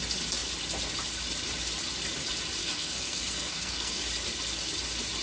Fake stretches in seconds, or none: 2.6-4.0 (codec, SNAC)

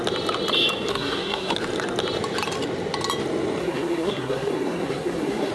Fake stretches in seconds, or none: 0.9-1.5 (codec, SNAC); 3.6-5.5